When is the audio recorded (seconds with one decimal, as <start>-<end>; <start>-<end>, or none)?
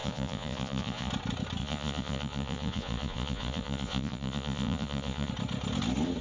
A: 1.1-1.6; 5.3-6.2